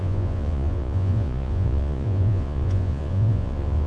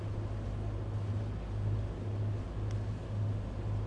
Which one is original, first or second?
second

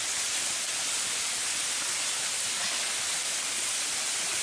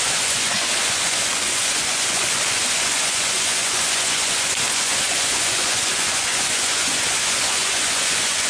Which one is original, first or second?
first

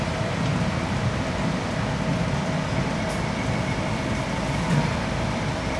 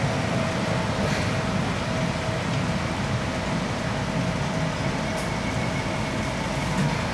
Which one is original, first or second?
second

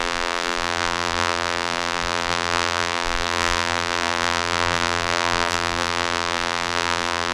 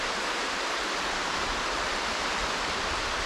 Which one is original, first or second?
second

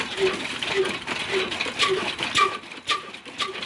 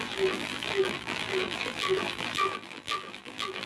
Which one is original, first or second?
first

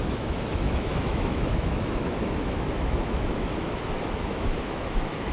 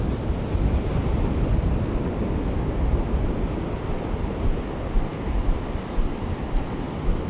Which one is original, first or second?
second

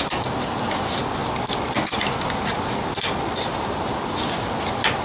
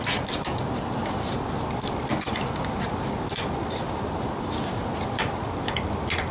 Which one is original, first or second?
first